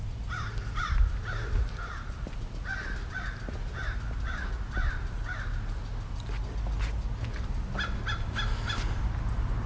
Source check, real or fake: real